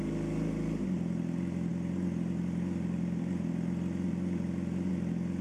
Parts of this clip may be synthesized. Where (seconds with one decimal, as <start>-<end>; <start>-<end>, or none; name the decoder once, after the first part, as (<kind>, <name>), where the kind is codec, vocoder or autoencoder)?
none